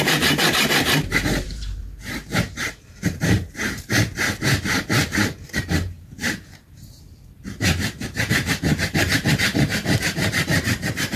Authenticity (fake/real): fake